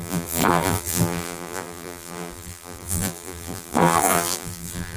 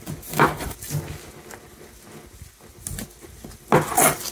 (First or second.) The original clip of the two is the second